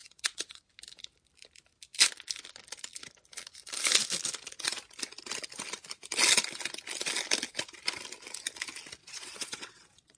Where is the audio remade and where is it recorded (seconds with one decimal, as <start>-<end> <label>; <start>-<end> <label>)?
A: 0.0-0.6 remade; 0.6-9.0 recorded; 9.0-10.2 remade